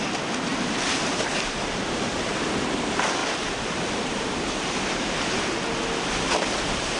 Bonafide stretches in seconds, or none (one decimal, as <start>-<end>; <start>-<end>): 0.0-0.5; 2.1-3.2; 5.2-7.0

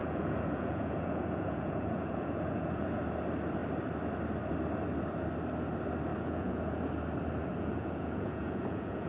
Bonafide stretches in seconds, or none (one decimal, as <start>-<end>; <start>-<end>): 3.0-6.1; 6.8-7.5

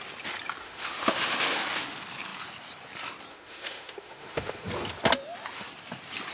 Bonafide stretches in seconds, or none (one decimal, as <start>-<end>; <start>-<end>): 0.0-0.6; 1.6-3.3; 4.7-6.3

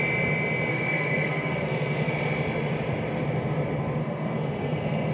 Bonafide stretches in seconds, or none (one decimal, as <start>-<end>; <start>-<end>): 0.0-0.7; 2.1-4.0

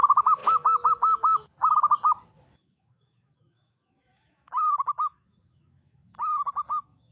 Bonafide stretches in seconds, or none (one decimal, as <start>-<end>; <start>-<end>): 0.4-0.9; 1.5-2.5

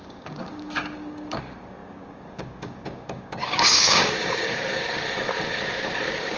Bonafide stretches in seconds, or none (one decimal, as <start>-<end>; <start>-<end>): none

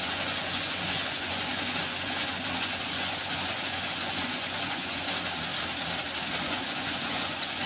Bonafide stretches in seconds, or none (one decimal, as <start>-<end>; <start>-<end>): 5.5-6.4

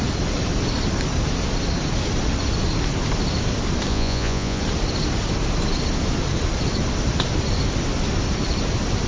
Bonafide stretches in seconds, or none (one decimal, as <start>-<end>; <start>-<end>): 0.0-3.9; 4.6-9.1